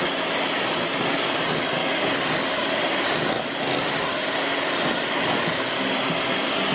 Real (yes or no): yes